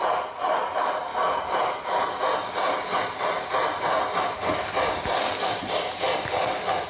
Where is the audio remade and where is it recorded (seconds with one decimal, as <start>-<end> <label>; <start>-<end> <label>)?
0.0-6.9 recorded